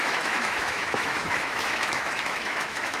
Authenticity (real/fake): fake